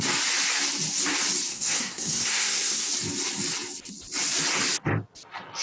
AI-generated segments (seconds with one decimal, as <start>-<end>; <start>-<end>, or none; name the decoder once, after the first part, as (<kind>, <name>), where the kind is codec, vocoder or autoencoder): 1.5-2.9 (codec, SNAC)

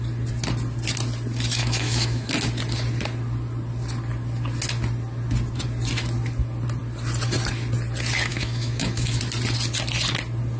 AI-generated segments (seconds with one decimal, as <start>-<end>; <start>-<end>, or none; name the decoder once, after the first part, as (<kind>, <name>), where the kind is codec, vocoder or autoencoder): 1.6-2.3 (autoencoder, DAC-VAE); 8.3-9.2

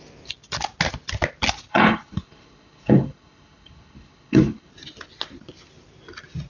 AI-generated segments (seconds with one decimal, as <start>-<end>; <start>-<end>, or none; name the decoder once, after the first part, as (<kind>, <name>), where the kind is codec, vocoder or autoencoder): 1.7-4.7 (codec, HILCodec)

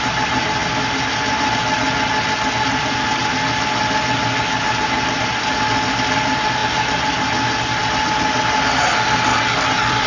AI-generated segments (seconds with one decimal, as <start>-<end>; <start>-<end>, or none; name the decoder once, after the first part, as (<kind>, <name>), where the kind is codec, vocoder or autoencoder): 9.3-10.1 (codec, DAC)

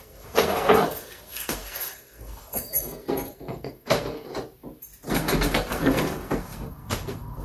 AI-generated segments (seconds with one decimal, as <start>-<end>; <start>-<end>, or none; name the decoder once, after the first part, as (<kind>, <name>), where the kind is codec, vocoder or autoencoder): 0.0-4.3 (codec, SNAC); 5.1-7.4